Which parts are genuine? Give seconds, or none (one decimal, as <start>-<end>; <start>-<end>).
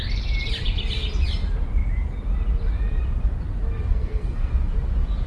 0.0-3.9; 4.5-5.3